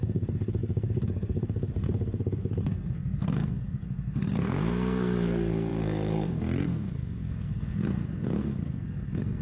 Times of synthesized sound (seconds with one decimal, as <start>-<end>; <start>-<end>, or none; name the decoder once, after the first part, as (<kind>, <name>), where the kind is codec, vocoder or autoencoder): 0.0-9.4 (codec, SNAC)